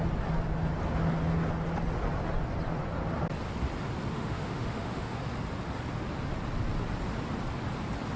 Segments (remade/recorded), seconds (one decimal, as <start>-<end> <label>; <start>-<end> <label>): 0.0-4.1 recorded; 4.1-5.2 remade; 5.2-8.2 recorded